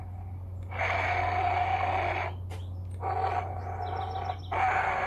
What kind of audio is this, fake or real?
real